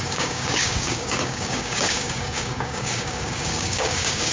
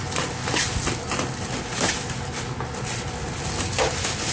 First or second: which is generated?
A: first